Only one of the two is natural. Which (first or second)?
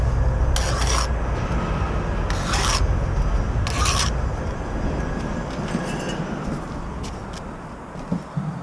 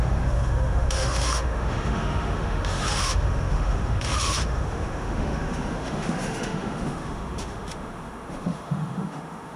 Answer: first